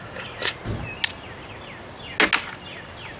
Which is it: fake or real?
real